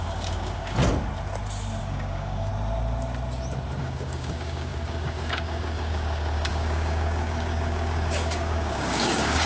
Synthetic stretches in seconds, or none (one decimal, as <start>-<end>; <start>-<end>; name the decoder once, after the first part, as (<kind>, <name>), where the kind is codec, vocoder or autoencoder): 0.0-0.8 (codec, DAC); 1.8-2.5; 3.8-9.5